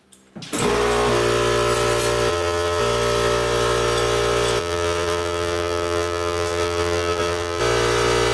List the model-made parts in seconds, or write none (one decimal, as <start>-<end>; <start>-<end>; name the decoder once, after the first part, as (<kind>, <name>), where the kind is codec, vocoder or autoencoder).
2.3-2.8 (vocoder, BigVGAN v2); 4.6-7.6